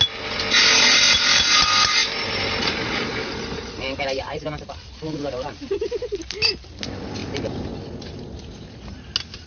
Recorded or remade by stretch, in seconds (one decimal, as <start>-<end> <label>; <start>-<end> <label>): 0.0-2.0 recorded; 2.0-6.2 remade; 6.2-9.5 recorded